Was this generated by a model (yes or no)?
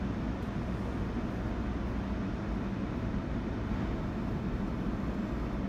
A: no